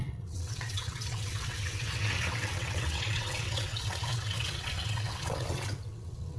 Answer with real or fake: fake